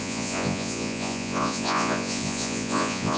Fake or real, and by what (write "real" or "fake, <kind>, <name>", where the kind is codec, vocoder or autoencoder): fake, vocoder, Vocos